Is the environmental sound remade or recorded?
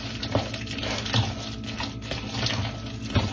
recorded